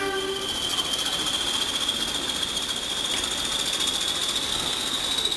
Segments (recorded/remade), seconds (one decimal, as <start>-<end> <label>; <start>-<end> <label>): 0.0-4.5 recorded; 4.5-5.0 remade; 5.0-5.4 recorded